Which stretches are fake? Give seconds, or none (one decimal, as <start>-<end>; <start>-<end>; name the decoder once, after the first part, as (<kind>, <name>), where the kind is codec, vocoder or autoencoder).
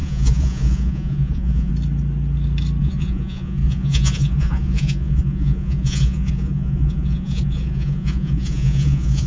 0.0-1.7 (vocoder, Vocos); 2.8-9.3